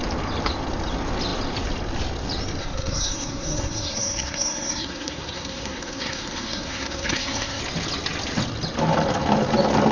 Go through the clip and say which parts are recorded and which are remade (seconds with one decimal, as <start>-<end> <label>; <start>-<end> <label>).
0.0-2.6 recorded; 2.6-7.6 remade; 7.6-9.9 recorded